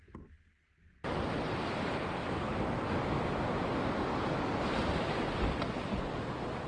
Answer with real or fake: real